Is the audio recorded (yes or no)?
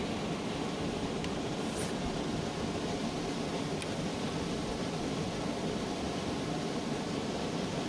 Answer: yes